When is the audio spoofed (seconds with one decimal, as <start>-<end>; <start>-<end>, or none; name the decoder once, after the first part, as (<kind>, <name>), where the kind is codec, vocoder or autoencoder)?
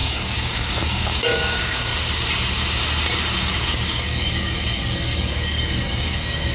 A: 0.0-1.9 (codec, DAC); 3.4-6.5